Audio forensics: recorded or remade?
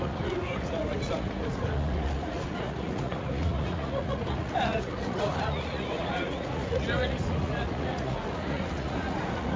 remade